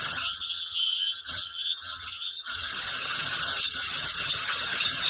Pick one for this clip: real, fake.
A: fake